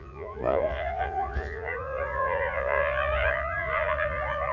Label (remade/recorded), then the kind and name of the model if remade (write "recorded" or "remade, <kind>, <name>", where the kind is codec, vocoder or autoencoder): remade, vocoder, Vocos